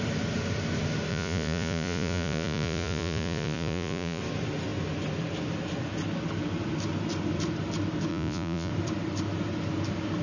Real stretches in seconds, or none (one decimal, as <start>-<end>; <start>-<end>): 0.0-1.1; 4.2-8.1; 8.7-10.2